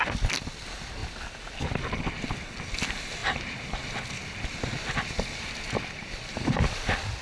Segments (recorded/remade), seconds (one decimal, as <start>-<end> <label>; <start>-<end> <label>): 0.0-7.2 recorded